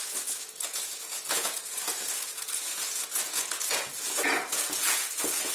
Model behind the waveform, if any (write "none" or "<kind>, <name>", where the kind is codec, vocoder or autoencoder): vocoder, Vocos